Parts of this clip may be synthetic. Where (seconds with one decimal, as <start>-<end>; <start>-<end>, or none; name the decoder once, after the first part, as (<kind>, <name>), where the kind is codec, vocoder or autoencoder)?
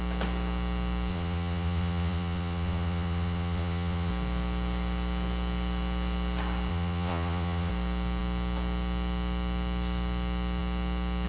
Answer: 1.1-4.1 (vocoder, Vocos); 6.7-7.7